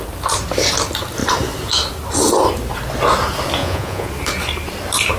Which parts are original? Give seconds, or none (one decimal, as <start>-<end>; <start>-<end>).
0.0-3.6; 4.1-5.2